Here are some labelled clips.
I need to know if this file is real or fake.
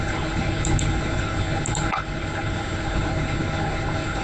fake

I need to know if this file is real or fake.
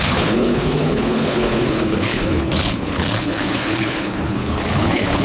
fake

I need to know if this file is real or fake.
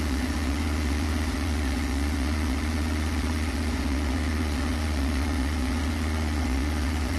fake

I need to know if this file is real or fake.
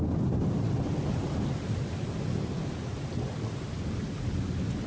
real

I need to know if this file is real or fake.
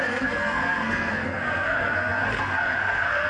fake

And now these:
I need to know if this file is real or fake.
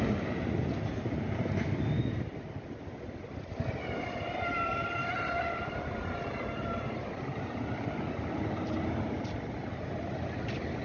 real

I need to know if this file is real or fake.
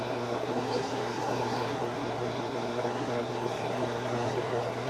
fake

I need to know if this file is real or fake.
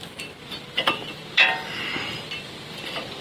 real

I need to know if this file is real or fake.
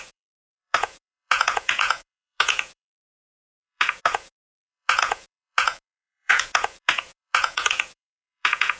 fake